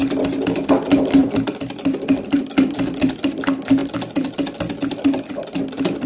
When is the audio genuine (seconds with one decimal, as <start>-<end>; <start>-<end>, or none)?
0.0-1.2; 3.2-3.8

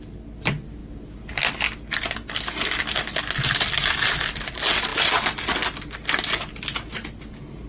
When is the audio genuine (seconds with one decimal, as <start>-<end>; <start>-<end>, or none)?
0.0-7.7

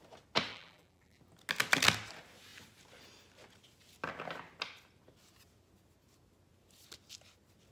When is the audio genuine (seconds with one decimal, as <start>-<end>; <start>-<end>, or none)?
0.0-0.5; 1.2-7.7

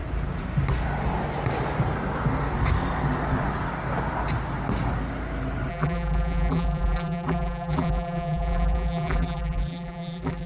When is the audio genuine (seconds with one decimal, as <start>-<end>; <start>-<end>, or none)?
0.0-5.7

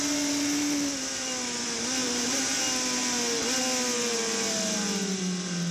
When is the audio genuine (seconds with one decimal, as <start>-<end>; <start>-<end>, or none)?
0.0-2.0; 2.6-5.7

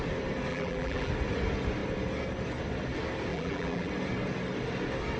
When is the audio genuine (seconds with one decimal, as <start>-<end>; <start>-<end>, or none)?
0.0-0.5; 1.1-3.3; 3.9-5.2

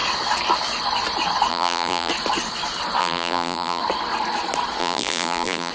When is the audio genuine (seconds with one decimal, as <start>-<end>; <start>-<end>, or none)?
0.0-1.5; 2.1-3.0; 3.8-4.8